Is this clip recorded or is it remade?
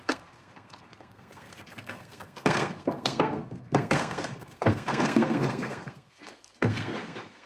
remade